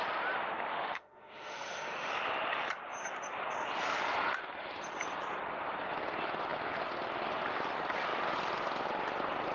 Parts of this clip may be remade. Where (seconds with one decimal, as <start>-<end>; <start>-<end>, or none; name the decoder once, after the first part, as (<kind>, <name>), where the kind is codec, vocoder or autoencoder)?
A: 0.7-2.1 (autoencoder, DAC-VAE)